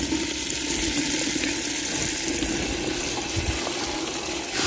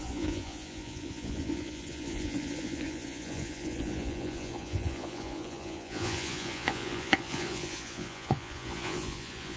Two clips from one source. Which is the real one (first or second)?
first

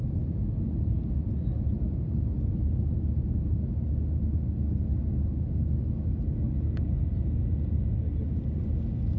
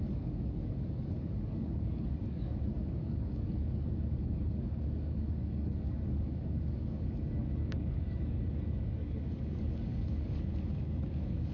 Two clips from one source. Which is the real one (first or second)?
first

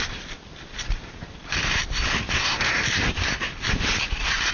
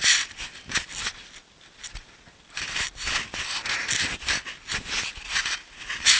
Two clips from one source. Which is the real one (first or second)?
second